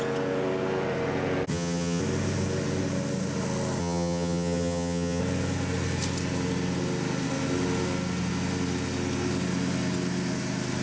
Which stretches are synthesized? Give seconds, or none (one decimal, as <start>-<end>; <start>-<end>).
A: 1.5-2.0; 3.8-5.2